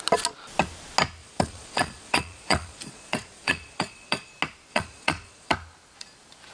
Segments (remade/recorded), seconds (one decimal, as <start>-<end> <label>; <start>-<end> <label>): 0.0-1.2 recorded; 1.2-4.3 remade; 4.3-4.7 recorded; 4.7-5.5 remade; 5.5-6.5 recorded